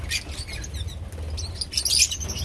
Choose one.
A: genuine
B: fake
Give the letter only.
A